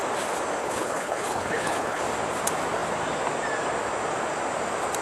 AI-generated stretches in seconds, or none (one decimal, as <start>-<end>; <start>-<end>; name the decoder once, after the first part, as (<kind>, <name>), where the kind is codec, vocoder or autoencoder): 0.6-2.0 (codec, HILCodec)

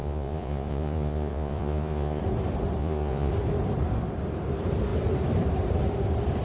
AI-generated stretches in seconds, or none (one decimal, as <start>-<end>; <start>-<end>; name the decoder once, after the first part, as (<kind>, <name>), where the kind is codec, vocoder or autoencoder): 0.0-2.2 (vocoder, Vocos); 2.8-3.3

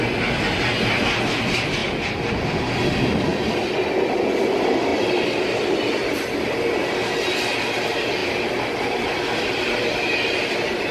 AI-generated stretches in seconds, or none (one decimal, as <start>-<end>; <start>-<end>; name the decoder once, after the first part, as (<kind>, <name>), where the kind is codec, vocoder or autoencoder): none

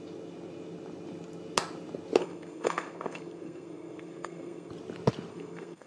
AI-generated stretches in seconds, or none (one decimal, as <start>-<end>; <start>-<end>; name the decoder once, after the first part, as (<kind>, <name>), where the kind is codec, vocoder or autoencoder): 2.2-4.7 (codec, SNAC); 5.3-5.9

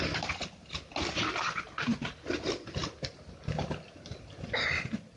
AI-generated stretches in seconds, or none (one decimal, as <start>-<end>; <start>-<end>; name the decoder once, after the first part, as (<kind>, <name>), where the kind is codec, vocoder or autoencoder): none